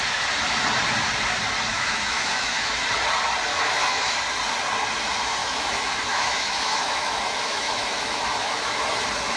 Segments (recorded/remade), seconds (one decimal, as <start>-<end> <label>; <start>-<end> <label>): 0.0-1.7 recorded; 1.7-2.7 remade; 2.7-3.5 recorded; 3.5-4.2 remade; 4.2-5.4 recorded; 5.4-8.8 remade; 8.8-9.4 recorded